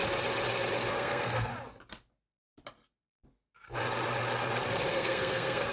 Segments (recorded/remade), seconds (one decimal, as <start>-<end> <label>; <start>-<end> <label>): 0.0-0.9 recorded; 0.9-1.5 remade; 1.5-4.9 recorded; 4.9-5.7 remade

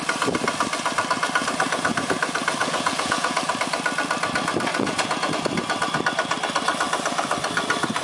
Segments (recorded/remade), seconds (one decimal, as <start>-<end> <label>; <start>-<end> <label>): 0.0-2.6 recorded; 2.6-3.5 remade; 3.5-4.7 recorded; 4.7-5.3 remade; 5.3-8.0 recorded

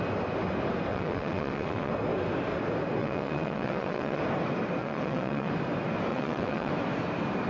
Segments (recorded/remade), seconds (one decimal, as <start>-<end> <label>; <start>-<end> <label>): 0.0-0.9 recorded; 0.9-1.9 remade; 1.9-3.0 recorded; 3.0-4.2 remade; 4.2-4.8 recorded; 4.8-5.5 remade; 5.5-6.1 recorded; 6.1-6.7 remade; 6.7-7.5 recorded

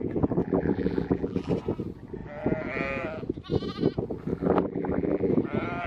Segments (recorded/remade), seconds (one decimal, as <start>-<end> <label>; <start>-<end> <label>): 0.0-0.4 recorded; 0.4-1.5 remade; 1.5-4.3 recorded; 4.3-5.3 remade; 5.3-5.9 recorded

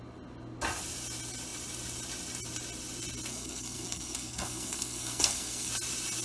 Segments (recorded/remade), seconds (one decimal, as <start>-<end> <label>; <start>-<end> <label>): 0.0-3.3 recorded; 3.3-5.7 remade; 5.7-6.2 recorded

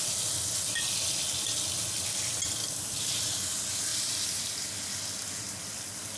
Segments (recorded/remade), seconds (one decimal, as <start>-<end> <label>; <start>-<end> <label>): 0.0-6.2 recorded

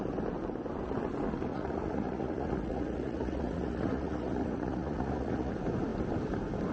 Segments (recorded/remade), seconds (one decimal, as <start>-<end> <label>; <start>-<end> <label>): 0.0-1.5 recorded; 1.5-5.5 remade; 5.5-6.7 recorded